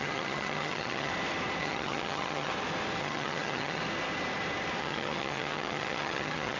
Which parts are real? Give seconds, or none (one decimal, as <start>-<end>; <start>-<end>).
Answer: 1.1-1.6; 2.5-3.0; 3.8-4.8